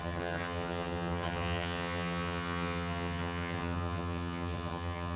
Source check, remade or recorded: remade